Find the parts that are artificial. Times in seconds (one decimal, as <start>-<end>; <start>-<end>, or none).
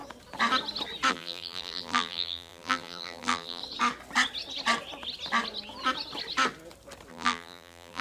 1.1-3.6; 7.1-8.0